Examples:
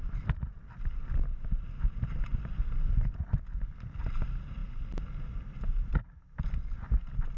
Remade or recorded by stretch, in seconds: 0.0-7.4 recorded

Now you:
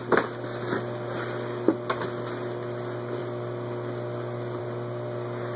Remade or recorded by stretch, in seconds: 0.0-5.6 recorded

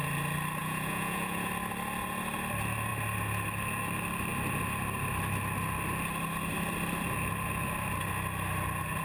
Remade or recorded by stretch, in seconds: 0.0-0.6 recorded; 0.6-1.5 remade; 1.5-9.0 recorded

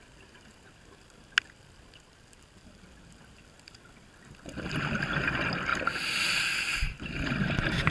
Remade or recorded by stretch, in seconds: 0.0-7.9 recorded